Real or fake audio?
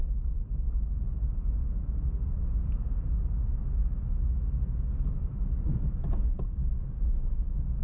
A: real